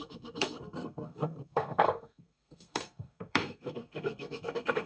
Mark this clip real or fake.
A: fake